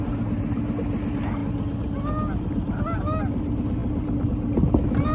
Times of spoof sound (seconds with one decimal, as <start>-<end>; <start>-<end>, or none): none